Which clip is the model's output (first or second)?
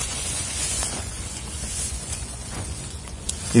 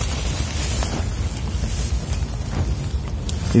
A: first